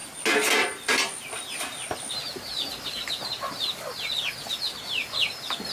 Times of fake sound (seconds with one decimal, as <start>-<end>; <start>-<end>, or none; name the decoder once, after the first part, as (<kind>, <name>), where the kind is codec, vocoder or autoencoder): none